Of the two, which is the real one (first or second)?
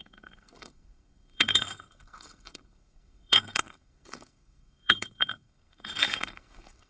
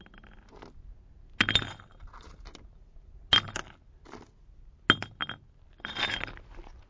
second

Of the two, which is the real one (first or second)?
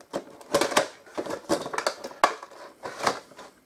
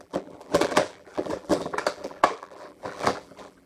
first